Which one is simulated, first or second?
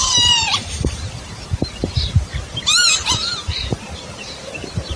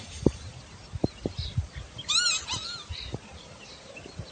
first